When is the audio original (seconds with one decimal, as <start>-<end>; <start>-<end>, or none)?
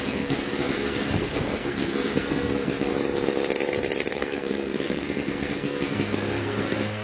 2.9-4.1